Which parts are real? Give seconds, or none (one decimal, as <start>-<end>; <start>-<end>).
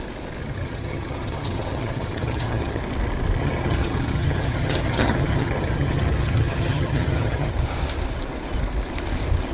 0.0-0.4; 2.8-3.4; 7.5-9.5